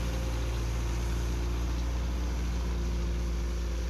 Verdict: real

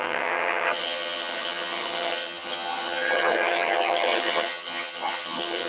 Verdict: fake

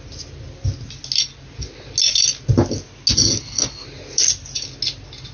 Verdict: real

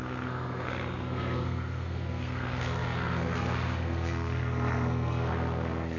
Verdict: fake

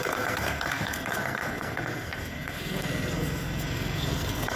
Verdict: fake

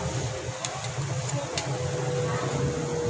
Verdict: real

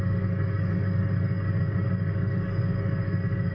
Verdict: fake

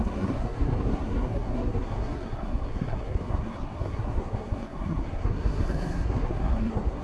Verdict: fake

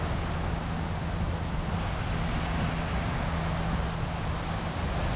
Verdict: real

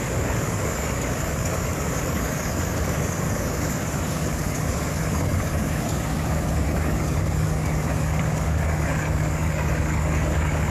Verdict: fake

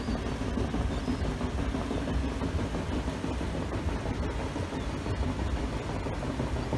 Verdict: real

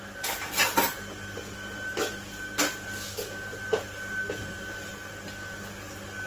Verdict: real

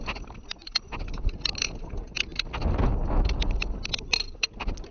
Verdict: real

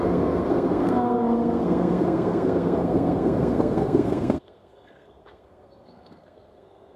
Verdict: fake